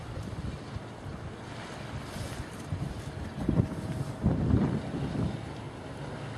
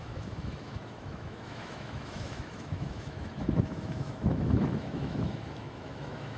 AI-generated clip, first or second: second